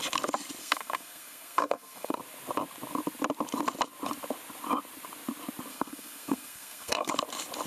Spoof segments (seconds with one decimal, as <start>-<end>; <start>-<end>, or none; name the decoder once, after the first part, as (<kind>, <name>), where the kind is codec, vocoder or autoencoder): 0.6-2.2 (codec, SNAC); 5.7-7.1